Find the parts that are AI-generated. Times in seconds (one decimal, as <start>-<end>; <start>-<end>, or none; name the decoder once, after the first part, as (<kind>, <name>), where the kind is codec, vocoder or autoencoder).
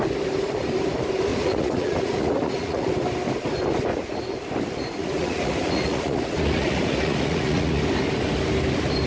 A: 1.3-2.9 (vocoder, Vocos); 3.9-4.4; 5.0-7.8